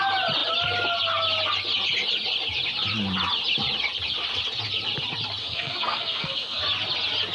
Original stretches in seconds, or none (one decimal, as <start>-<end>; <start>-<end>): 0.0-5.4; 6.6-7.3